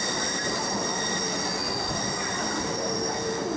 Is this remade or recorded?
recorded